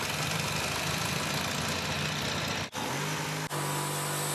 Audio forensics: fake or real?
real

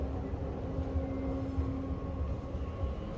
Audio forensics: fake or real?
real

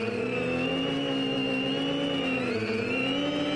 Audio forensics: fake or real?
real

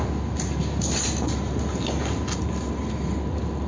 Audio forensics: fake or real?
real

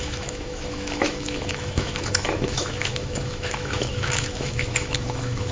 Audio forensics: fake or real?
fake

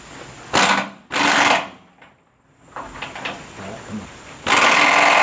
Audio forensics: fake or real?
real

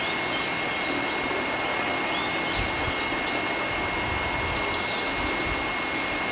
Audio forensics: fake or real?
real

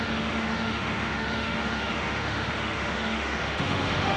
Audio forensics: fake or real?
fake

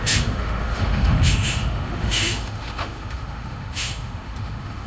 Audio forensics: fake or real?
fake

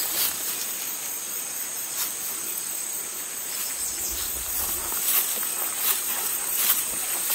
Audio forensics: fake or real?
real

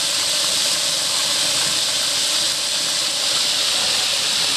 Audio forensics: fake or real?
real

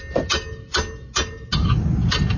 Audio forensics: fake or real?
real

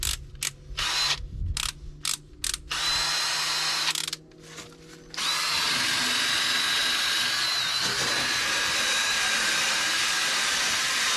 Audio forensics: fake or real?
real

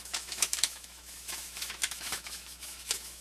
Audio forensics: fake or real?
fake